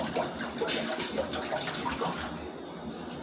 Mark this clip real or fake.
real